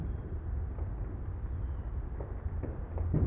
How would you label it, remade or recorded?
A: recorded